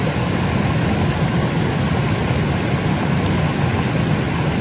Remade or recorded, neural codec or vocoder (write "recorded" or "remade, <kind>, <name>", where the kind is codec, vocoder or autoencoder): recorded